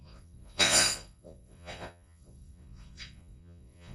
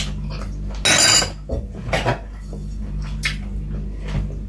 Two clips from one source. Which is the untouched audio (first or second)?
second